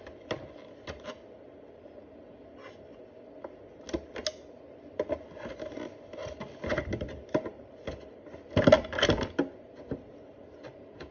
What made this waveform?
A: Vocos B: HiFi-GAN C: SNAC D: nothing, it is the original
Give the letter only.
D